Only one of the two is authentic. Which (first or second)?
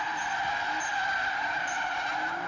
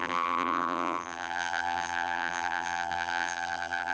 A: first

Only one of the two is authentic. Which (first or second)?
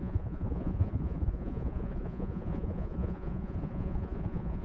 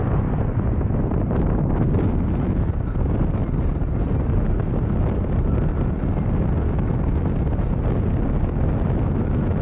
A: second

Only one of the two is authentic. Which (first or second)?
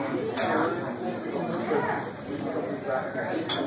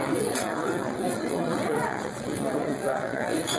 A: first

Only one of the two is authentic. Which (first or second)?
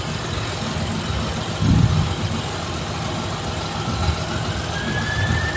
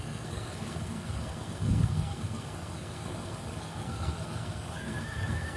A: first